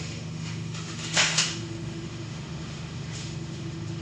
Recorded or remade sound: remade